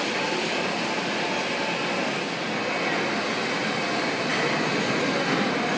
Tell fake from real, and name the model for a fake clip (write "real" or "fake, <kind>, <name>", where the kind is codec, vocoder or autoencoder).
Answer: real